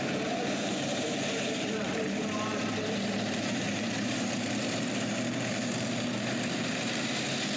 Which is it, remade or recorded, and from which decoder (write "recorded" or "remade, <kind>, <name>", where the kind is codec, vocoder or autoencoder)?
remade, vocoder, BigVGAN v2